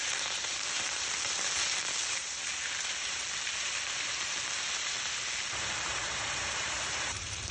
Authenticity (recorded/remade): remade